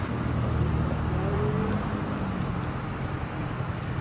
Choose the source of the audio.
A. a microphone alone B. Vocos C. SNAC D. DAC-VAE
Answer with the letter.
A